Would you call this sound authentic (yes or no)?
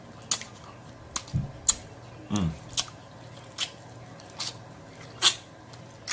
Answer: yes